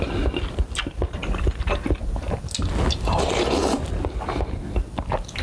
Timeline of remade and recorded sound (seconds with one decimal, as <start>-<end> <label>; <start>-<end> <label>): 0.0-5.4 recorded